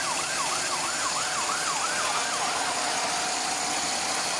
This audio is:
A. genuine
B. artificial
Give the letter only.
A